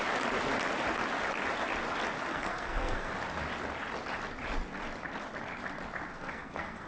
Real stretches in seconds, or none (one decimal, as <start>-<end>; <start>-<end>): 0.0-2.3; 3.1-6.1